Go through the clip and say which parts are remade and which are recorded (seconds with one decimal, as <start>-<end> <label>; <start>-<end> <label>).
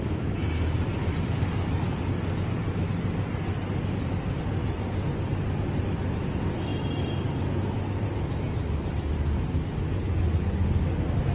0.0-11.3 recorded